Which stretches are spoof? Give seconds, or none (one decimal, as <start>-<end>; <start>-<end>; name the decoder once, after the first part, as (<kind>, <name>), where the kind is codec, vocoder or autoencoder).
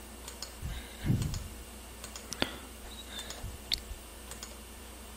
none